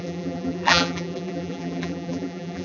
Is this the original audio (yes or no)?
no